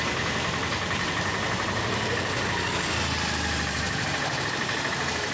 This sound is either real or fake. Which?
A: real